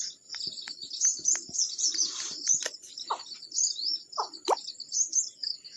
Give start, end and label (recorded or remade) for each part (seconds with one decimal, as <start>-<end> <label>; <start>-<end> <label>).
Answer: 0.0-0.8 recorded; 0.8-4.3 remade; 4.3-5.8 recorded